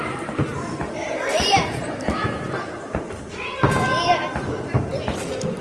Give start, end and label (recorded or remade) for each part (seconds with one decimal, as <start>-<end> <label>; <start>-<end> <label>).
0.0-5.6 remade